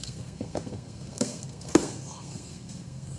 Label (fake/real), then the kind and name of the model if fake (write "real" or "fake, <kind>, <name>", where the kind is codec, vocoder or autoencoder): fake, codec, SNAC